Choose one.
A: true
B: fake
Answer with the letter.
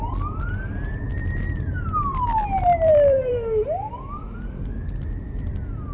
B